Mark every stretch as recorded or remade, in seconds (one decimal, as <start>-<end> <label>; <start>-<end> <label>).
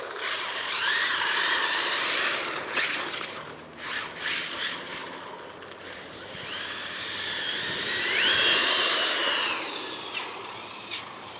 0.0-5.0 remade; 5.0-6.1 recorded; 6.1-11.4 remade